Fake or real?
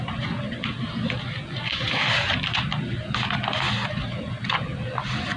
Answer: real